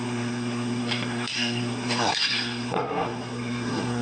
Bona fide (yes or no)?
no